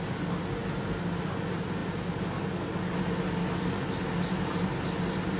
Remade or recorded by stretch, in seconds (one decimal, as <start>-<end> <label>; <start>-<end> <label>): 0.0-5.4 recorded